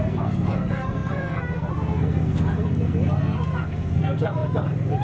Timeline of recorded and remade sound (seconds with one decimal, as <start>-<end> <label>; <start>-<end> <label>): 0.0-5.0 remade

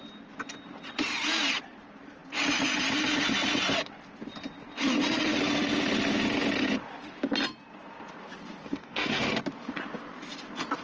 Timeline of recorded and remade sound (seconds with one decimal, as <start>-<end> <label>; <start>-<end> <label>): 0.0-8.6 recorded; 8.6-9.2 remade; 9.2-10.8 recorded